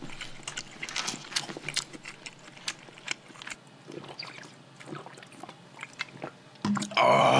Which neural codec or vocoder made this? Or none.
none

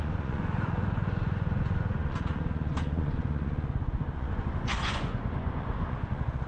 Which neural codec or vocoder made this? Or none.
vocoder, Vocos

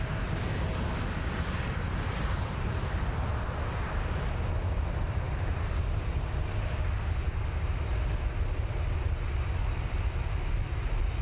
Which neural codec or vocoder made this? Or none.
none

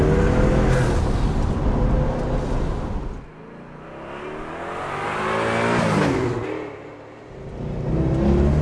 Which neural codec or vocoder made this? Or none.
none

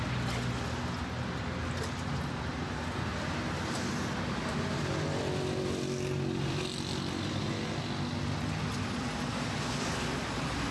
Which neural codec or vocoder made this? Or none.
none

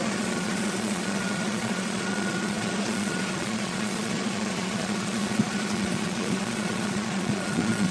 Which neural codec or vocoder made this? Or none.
vocoder, Vocos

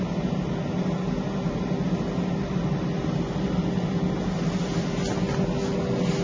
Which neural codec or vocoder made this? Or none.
none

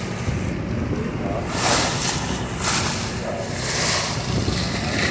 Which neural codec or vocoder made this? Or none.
none